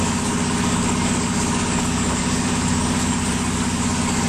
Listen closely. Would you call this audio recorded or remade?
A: remade